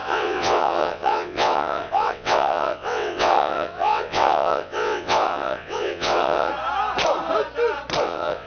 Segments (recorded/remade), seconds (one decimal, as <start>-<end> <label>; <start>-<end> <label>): 0.0-6.5 remade; 6.5-8.0 recorded; 8.0-8.5 remade